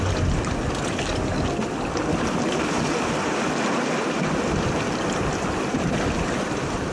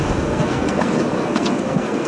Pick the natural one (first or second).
first